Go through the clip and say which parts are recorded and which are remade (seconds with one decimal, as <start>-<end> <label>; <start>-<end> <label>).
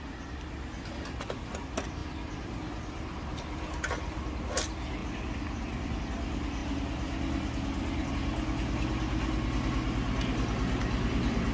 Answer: 0.0-2.0 recorded; 2.0-3.9 remade; 3.9-5.0 recorded; 5.0-6.0 remade; 6.0-11.5 recorded